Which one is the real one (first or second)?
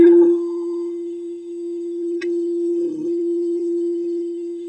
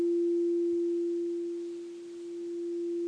second